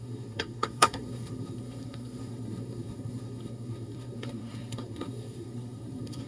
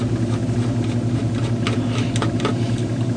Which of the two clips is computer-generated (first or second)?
first